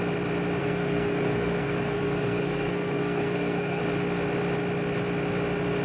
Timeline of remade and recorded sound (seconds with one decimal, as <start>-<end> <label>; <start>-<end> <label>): 0.0-0.6 recorded; 0.6-3.8 remade; 3.8-5.8 recorded